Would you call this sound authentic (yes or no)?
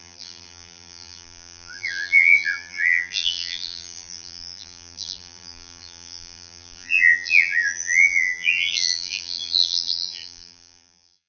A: no